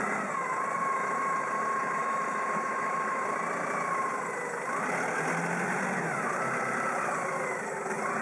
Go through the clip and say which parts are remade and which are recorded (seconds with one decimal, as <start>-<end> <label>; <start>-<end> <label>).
0.0-2.0 recorded; 2.0-3.2 remade; 3.2-8.2 recorded